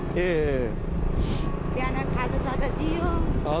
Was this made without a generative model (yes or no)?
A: yes